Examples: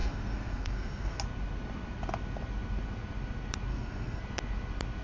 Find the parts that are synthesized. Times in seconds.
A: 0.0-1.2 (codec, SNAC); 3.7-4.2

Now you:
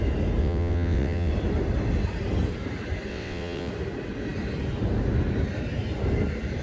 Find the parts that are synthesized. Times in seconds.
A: 0.4-1.3 (vocoder, WaveNeXt); 3.1-3.7

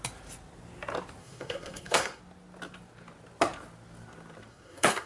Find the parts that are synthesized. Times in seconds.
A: 1.2-2.2 (codec, SNAC); 4.5-5.1

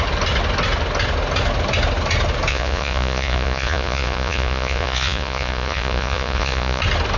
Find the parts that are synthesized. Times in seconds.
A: 2.5-6.8 (vocoder, Vocos)